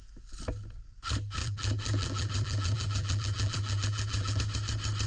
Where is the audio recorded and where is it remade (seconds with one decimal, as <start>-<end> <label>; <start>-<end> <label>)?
0.0-1.4 recorded; 1.4-4.4 remade; 4.4-5.1 recorded